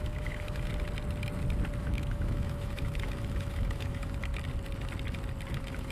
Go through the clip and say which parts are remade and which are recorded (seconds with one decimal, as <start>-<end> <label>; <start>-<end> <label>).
0.0-0.7 remade; 0.7-1.8 recorded; 1.8-4.3 remade; 4.3-5.5 recorded; 5.5-5.9 remade